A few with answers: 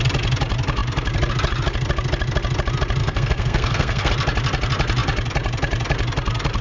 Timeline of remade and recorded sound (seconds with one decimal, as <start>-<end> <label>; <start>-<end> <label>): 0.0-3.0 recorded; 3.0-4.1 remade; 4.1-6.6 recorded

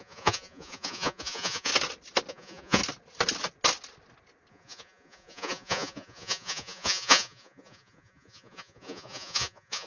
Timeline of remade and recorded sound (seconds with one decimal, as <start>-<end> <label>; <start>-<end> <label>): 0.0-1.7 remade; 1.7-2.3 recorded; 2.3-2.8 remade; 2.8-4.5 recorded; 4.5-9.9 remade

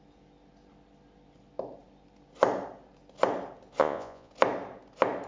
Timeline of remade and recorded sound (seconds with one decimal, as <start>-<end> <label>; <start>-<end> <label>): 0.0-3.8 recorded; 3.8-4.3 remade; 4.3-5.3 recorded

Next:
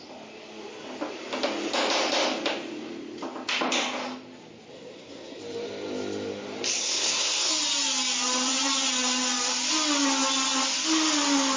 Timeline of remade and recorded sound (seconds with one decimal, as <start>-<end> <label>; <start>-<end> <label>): 0.0-4.7 recorded; 4.7-5.4 remade; 5.4-6.8 recorded; 6.8-7.5 remade; 7.5-11.6 recorded

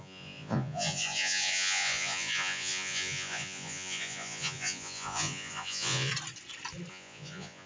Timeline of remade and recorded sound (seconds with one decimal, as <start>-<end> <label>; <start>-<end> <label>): 0.0-6.1 remade; 6.1-6.9 recorded; 6.9-7.7 remade

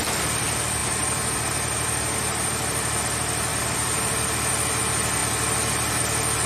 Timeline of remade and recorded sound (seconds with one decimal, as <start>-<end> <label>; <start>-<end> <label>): 0.0-0.8 recorded; 0.8-3.0 remade; 3.0-3.5 recorded; 3.5-4.8 remade; 4.8-6.5 recorded

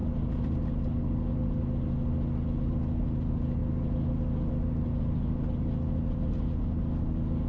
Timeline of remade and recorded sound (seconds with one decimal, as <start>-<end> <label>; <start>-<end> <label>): 0.0-7.5 recorded

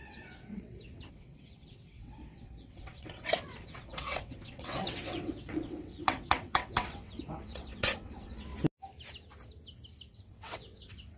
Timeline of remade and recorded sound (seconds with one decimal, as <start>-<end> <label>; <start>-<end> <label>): 0.0-8.5 remade; 8.5-10.1 recorded; 10.1-11.2 remade